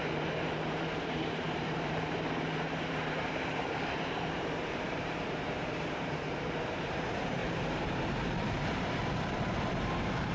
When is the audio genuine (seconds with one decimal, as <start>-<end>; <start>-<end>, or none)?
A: none